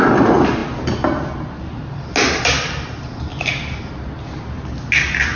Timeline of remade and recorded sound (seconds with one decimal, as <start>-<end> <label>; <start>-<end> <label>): 0.0-5.4 recorded